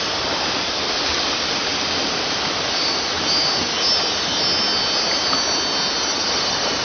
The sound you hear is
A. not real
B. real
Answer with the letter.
B